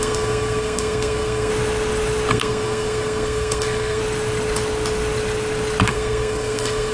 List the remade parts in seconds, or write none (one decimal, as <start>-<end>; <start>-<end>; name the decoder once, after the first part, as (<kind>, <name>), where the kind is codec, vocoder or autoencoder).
0.0-1.5 (codec, SNAC); 2.3-4.0; 5.9-6.9